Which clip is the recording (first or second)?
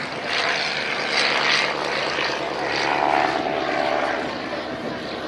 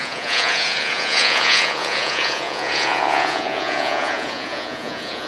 first